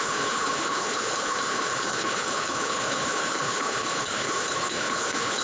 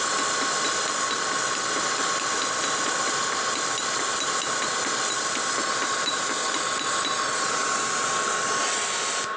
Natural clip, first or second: second